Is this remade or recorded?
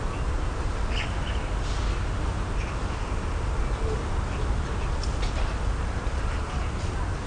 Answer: recorded